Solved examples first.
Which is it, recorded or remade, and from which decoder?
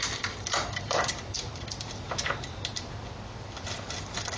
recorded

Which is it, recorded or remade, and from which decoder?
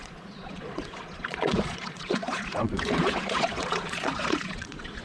remade, vocoder, Vocos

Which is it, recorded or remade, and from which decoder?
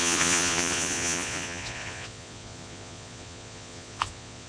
remade, vocoder, Vocos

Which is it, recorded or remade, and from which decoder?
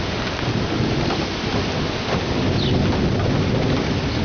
recorded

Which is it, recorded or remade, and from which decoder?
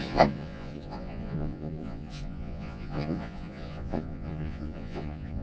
remade, vocoder, Vocos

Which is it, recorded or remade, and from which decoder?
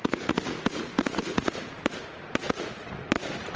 remade, vocoder, Vocos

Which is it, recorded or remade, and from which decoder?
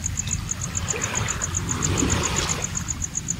recorded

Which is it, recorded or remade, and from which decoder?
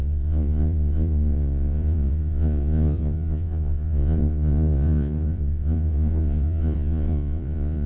remade, vocoder, Vocos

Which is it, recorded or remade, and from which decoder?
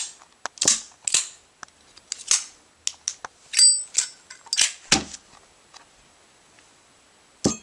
recorded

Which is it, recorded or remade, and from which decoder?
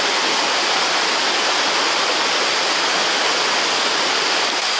recorded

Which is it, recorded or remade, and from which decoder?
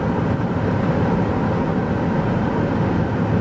recorded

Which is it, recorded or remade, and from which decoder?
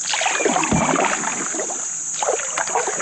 recorded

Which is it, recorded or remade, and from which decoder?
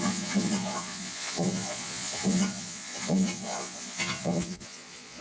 remade, vocoder, Vocos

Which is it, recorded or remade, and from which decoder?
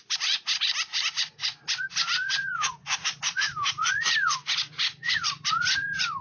remade, vocoder, Vocos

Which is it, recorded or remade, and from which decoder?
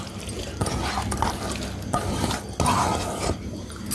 recorded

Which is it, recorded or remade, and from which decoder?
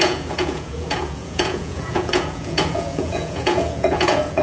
remade, vocoder, Vocos